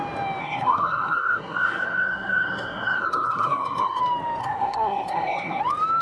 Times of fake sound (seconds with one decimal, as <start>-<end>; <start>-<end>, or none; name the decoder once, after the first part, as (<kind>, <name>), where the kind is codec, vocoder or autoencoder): 0.4-4.0 (codec, SNAC); 4.4-5.6